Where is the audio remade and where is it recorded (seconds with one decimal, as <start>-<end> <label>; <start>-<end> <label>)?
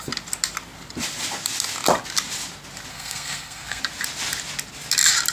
0.0-2.9 recorded; 2.9-3.8 remade; 3.8-5.3 recorded